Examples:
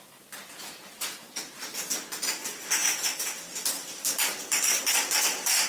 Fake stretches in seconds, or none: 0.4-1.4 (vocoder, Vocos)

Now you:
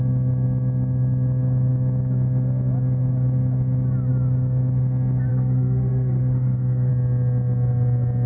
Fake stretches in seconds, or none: 5.3-6.9 (codec, SNAC)

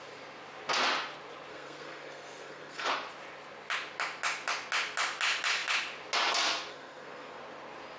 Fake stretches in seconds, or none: 1.5-2.9 (codec, SNAC); 6.7-7.4

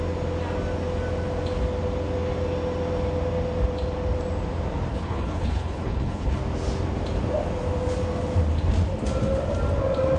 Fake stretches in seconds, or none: 4.9-6.4 (codec, HILCodec)

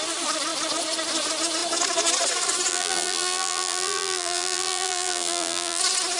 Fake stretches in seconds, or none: 2.7-5.8 (vocoder, BigVGAN v2)

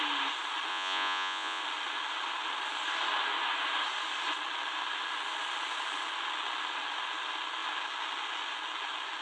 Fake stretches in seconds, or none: 0.7-1.6 (vocoder, Vocos)